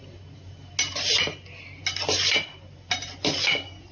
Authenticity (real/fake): real